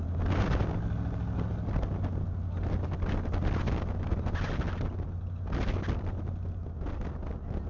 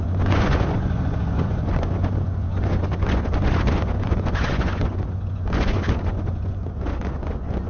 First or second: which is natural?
first